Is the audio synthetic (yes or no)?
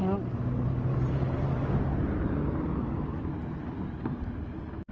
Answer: no